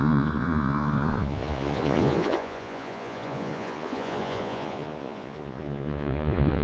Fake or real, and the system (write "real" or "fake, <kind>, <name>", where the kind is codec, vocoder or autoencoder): fake, vocoder, Vocos